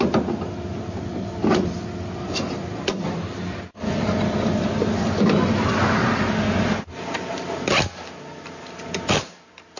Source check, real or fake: real